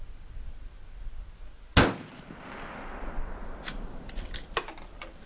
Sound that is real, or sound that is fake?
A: real